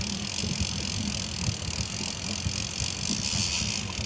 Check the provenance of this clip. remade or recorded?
recorded